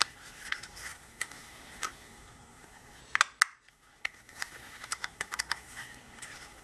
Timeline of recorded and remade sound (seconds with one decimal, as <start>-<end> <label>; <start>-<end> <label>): 0.0-3.0 remade; 3.0-3.7 recorded; 3.7-6.6 remade